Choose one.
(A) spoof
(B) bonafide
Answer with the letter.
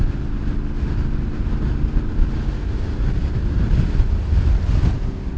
B